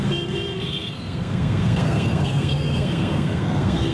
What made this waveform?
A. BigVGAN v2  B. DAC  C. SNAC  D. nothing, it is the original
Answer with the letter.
C